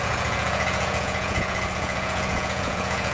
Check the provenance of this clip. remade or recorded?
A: remade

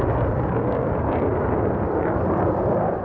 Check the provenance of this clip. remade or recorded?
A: recorded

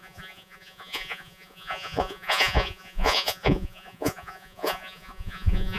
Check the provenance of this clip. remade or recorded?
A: remade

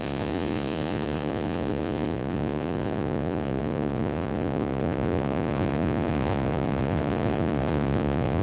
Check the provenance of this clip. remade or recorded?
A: remade